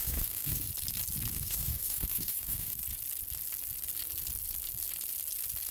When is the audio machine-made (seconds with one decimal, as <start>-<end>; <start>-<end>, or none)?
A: 0.0-0.7; 1.3-2.8